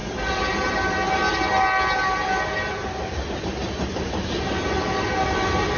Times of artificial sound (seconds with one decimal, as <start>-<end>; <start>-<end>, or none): none